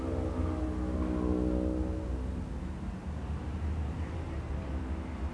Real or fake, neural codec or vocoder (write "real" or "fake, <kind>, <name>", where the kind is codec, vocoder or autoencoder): real